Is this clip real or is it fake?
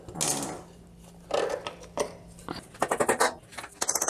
real